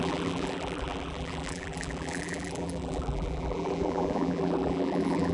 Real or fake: fake